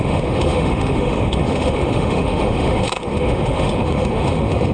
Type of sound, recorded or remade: remade